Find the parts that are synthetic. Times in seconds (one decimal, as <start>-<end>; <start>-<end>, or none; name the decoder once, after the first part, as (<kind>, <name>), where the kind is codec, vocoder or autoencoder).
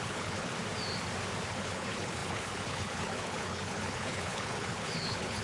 0.0-0.5 (codec, HILCodec); 1.5-5.4